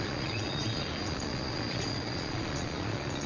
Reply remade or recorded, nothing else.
remade